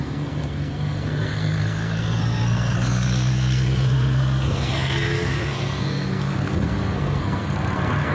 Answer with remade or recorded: remade